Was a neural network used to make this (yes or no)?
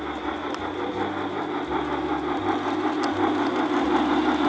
no